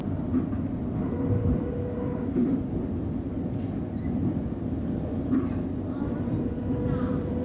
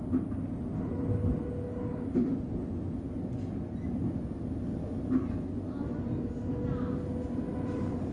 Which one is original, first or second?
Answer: second